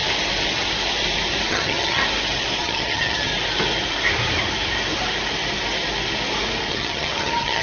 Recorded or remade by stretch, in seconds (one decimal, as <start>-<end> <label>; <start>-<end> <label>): 0.0-1.5 recorded; 1.5-2.0 remade; 2.0-2.6 recorded; 2.6-3.3 remade; 3.3-6.7 recorded; 6.7-7.6 remade